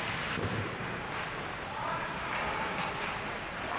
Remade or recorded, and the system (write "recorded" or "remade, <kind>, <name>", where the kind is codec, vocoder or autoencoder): recorded